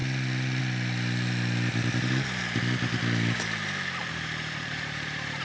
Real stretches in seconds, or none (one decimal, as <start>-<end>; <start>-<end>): 0.0-4.0